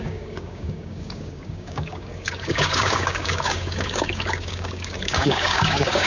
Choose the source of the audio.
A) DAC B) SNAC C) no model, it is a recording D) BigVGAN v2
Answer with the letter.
A